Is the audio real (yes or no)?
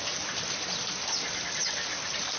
yes